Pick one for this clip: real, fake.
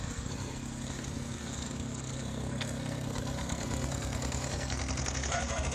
fake